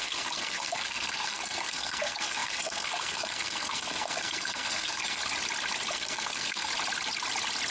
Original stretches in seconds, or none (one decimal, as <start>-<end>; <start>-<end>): 5.2-5.9; 6.7-7.7